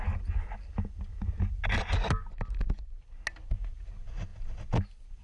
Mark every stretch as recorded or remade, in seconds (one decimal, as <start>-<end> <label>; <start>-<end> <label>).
0.0-5.2 recorded